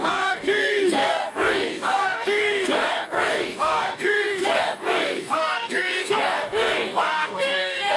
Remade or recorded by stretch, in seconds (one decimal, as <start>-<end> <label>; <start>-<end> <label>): 0.0-8.0 remade